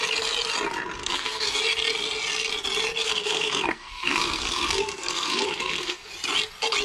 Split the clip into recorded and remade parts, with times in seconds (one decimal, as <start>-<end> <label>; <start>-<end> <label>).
0.0-1.0 recorded; 1.0-1.6 remade; 1.6-3.0 recorded; 3.0-6.1 remade; 6.1-6.8 recorded

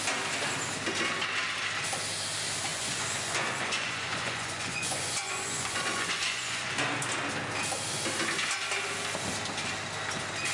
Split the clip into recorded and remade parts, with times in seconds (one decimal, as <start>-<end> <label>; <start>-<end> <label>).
0.0-2.7 recorded; 2.7-6.7 remade; 6.7-10.5 recorded

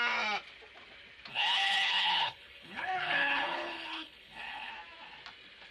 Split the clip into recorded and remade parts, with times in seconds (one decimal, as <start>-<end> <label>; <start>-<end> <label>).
0.0-1.3 recorded; 1.3-4.7 remade; 4.7-5.7 recorded